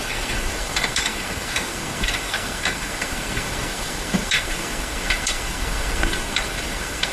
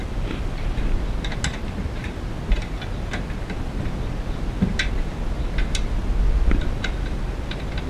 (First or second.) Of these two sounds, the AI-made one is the first